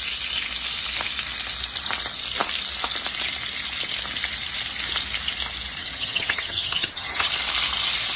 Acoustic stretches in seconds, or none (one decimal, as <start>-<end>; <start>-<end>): 0.0-5.8; 7.3-8.2